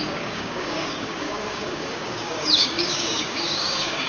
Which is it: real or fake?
fake